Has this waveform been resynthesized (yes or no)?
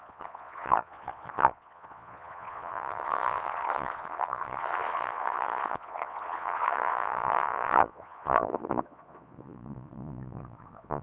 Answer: yes